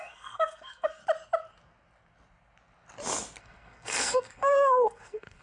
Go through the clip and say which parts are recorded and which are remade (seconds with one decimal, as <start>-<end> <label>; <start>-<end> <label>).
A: 0.0-1.0 remade; 1.0-3.4 recorded; 3.4-5.4 remade